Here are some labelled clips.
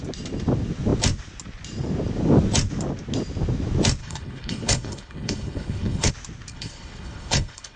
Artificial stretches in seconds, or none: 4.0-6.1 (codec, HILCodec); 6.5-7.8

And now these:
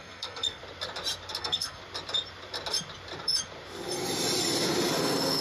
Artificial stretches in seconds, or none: 0.0-0.6 (codec, SNAC); 1.4-1.8; 5.0-5.4

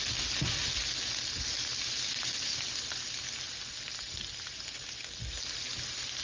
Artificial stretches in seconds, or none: none

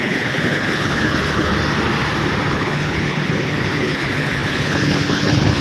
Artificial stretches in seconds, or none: 0.0-1.5 (codec, HILCodec); 2.5-5.6